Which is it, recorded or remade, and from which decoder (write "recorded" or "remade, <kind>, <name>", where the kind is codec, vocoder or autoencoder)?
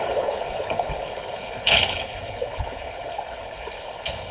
remade, codec, HILCodec